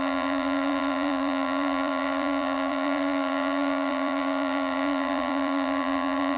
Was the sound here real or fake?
fake